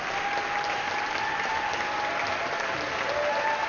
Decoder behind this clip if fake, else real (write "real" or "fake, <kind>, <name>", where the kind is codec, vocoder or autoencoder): real